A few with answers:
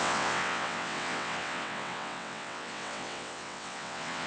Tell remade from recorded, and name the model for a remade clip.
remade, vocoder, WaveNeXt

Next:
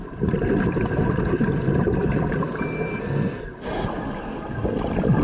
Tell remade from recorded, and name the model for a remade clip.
recorded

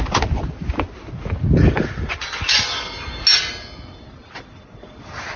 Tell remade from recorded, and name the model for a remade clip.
recorded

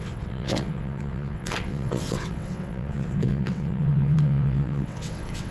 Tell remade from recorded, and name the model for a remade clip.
remade, vocoder, WaveNeXt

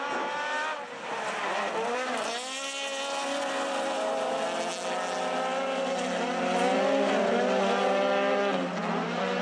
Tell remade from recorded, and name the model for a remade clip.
recorded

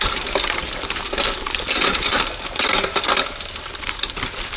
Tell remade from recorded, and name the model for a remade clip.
recorded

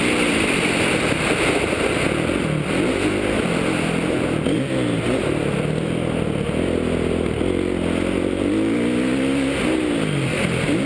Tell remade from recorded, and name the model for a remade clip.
recorded